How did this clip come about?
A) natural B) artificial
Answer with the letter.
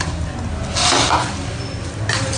A